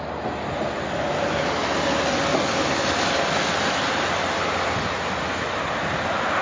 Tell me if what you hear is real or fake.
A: real